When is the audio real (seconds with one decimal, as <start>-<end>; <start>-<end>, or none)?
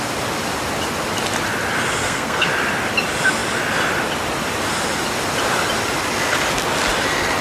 0.0-2.0; 2.5-7.4